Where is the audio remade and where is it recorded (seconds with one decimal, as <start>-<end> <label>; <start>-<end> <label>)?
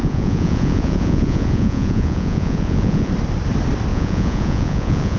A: 0.0-3.1 remade; 3.1-3.9 recorded; 3.9-5.2 remade